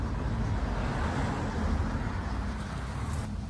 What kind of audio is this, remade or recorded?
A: recorded